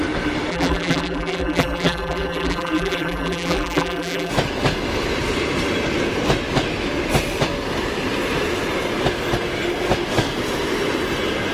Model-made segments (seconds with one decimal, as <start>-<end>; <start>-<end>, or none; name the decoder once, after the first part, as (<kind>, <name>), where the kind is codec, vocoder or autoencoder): 0.5-4.3 (vocoder, BigVGAN v2)

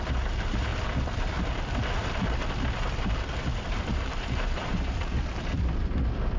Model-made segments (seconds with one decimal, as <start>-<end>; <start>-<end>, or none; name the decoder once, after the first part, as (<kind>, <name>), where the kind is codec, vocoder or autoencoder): 0.7-1.5 (vocoder, BigVGAN v2); 2.0-5.8

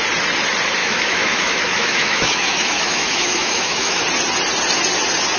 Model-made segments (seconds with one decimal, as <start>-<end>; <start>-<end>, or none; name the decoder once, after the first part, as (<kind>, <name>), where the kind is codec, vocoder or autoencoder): 0.8-4.0 (autoencoder, DAC-VAE)